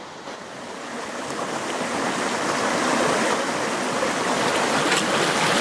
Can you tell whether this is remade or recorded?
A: recorded